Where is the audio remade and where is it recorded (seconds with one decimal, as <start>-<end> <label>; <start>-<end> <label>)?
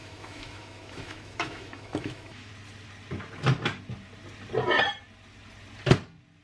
0.0-2.5 remade; 2.5-6.4 recorded